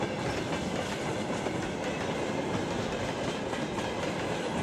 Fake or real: real